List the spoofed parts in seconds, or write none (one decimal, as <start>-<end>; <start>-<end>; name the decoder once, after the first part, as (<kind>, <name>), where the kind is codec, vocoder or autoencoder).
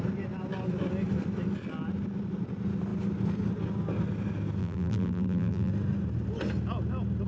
4.6-5.7 (vocoder, BigVGAN v2)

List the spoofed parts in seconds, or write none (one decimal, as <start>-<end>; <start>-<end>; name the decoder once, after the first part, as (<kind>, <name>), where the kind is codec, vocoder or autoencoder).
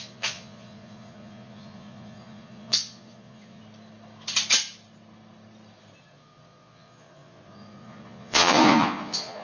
0.0-3.6 (vocoder, Vocos); 6.0-9.4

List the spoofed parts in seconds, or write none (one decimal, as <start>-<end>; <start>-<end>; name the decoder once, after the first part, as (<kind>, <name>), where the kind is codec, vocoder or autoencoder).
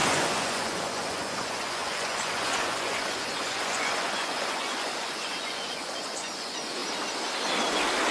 0.0-6.8 (vocoder, Vocos)